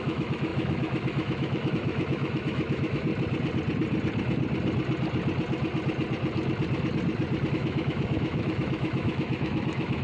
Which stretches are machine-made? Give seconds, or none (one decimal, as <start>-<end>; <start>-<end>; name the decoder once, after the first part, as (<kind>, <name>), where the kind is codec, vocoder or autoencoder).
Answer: 0.0-3.1 (autoencoder, DAC-VAE); 7.5-10.0